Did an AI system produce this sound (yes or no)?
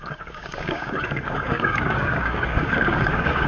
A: yes